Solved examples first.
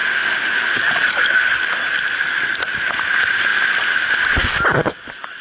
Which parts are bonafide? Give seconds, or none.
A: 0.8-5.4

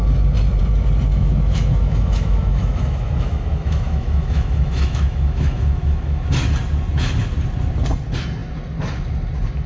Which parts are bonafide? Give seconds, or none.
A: 0.0-1.1; 6.3-9.7

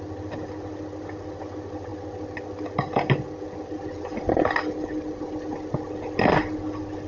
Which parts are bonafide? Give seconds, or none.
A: 0.0-7.1

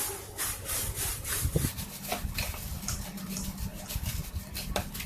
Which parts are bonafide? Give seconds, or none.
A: 0.0-1.1; 1.8-2.7; 3.2-3.7; 4.3-5.1

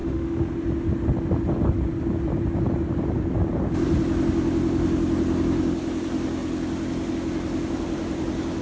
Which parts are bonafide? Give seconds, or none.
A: 0.5-8.6

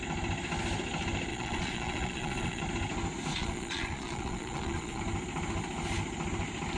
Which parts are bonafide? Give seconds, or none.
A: 0.0-1.3; 2.6-3.3; 5.0-6.8